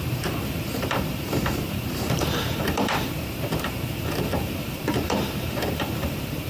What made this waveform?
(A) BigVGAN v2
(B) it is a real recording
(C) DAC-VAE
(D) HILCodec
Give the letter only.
A